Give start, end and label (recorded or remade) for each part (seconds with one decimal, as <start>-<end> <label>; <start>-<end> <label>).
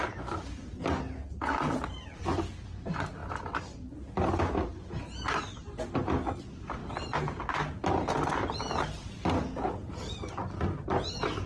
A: 0.0-11.5 recorded